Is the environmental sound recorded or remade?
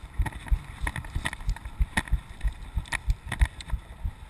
recorded